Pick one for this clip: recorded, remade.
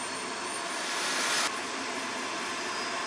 recorded